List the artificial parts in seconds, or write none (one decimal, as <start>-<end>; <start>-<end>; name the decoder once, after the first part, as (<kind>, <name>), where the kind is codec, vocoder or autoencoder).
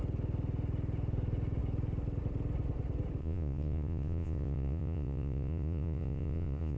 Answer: 3.2-6.8 (vocoder, Vocos)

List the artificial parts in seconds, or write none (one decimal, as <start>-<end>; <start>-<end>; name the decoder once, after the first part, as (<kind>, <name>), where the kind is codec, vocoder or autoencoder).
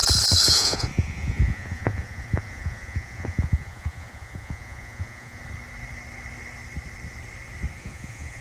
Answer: 0.5-5.4 (vocoder, Vocos); 7.8-8.4